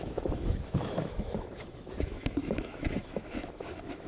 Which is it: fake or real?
fake